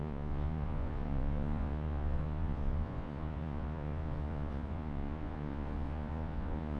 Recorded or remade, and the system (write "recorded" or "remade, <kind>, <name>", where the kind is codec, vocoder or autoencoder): remade, vocoder, Vocos